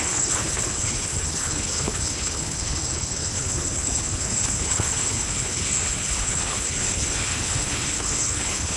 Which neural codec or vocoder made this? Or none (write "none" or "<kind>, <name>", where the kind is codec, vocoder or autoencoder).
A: codec, HILCodec